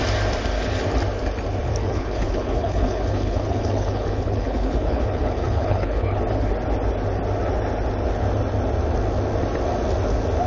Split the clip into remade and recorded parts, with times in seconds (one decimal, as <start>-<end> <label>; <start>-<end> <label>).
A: 0.0-1.8 recorded; 1.8-6.2 remade; 6.2-10.5 recorded